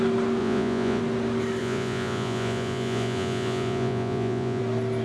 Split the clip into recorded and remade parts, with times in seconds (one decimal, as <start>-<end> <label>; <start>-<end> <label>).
0.0-0.4 recorded; 0.4-1.0 remade; 1.0-1.6 recorded; 1.6-4.6 remade; 4.6-5.0 recorded